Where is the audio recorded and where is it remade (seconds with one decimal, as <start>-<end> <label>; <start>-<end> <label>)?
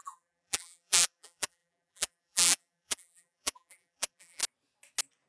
0.0-4.4 remade; 4.4-5.3 recorded